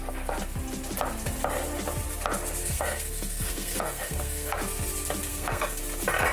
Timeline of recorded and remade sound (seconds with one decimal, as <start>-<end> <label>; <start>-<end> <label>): 0.0-2.6 recorded; 2.6-4.6 remade; 4.6-5.3 recorded; 5.3-5.8 remade; 5.8-6.3 recorded